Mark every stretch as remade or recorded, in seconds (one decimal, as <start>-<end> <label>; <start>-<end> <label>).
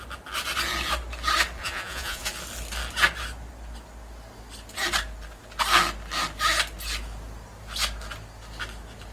0.0-1.6 recorded; 1.6-2.3 remade; 2.3-9.1 recorded